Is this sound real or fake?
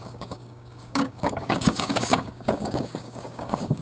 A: fake